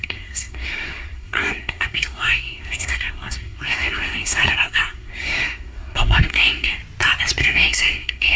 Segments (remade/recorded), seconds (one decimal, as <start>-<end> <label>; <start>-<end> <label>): 0.0-6.8 remade; 6.8-7.4 recorded; 7.4-8.4 remade